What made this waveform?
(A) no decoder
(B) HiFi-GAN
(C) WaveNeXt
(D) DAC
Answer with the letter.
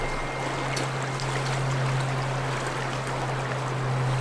A